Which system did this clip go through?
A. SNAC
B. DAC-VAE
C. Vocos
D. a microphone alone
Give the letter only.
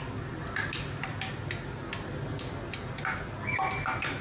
D